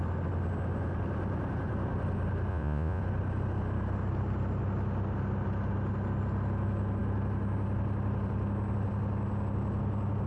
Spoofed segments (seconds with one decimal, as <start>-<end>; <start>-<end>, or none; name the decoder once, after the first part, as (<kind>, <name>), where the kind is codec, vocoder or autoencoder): 2.5-3.0 (vocoder, Vocos)